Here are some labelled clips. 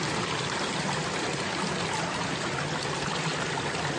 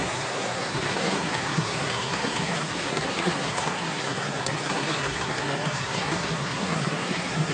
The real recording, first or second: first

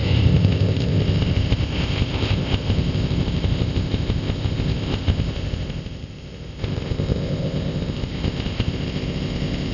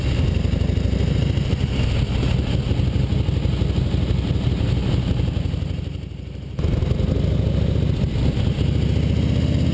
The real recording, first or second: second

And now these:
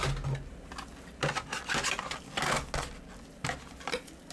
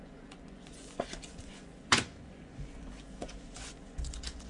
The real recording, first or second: first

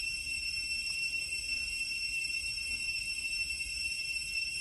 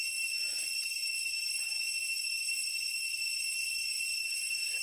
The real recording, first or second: second